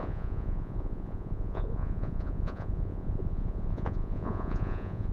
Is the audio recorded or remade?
remade